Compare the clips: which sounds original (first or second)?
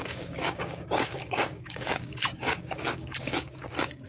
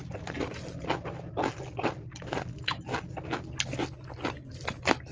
second